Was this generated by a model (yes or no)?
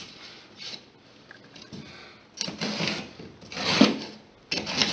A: no